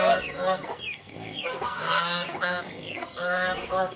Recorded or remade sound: remade